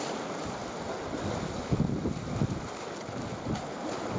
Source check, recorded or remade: recorded